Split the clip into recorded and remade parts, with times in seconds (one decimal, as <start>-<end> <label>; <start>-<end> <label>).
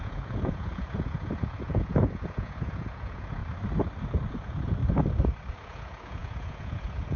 0.0-3.4 remade; 3.4-4.3 recorded; 4.3-4.8 remade; 4.8-5.5 recorded; 5.5-7.2 remade